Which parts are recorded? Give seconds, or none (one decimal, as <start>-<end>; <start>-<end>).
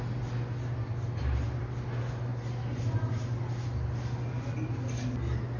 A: 0.0-0.8; 1.6-2.3; 2.8-5.6